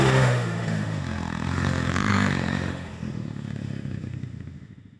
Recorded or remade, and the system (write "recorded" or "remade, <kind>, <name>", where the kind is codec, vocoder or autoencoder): remade, autoencoder, DAC-VAE